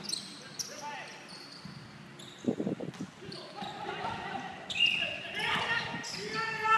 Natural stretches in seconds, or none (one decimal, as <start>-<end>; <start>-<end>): 0.0-6.8